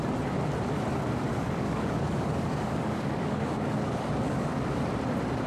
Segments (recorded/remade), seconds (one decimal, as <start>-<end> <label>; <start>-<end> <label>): 0.0-1.3 recorded; 1.3-4.6 remade; 4.6-5.5 recorded